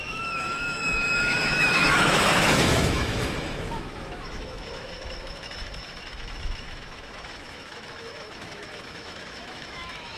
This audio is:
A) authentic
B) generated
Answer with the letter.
B